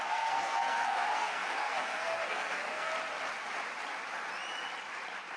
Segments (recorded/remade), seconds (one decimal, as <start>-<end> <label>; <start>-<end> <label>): 0.0-2.9 remade; 2.9-5.4 recorded